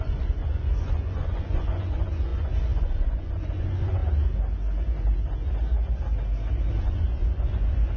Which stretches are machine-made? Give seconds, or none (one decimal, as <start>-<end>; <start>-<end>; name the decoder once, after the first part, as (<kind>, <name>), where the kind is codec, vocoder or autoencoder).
0.0-4.0 (vocoder, Vocos); 6.8-8.0